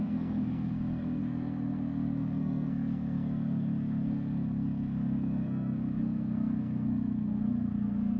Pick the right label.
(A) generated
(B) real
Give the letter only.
A